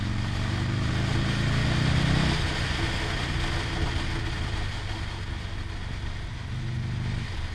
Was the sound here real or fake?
real